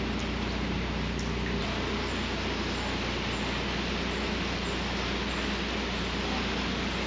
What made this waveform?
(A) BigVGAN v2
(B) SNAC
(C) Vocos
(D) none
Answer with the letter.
D